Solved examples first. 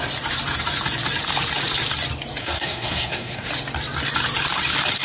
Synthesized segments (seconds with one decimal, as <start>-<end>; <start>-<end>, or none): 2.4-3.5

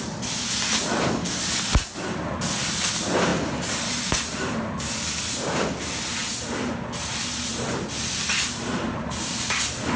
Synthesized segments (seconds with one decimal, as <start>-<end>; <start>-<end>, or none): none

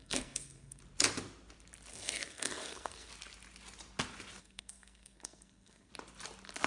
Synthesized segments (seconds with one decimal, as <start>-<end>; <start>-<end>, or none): 0.0-0.8; 1.9-3.1; 4.4-5.9

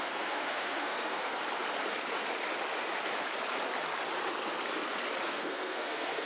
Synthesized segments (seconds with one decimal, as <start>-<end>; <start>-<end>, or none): 0.0-1.4; 5.2-6.3

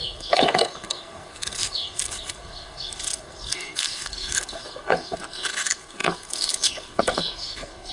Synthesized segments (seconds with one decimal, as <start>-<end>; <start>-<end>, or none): 0.0-7.9

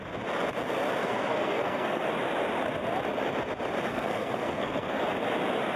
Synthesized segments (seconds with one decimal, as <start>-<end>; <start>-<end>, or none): 1.0-2.1; 3.9-5.0